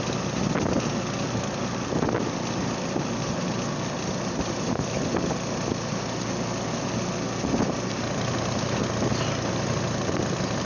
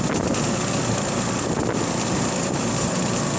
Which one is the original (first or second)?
first